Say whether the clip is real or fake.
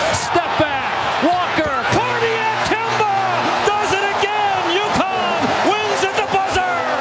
real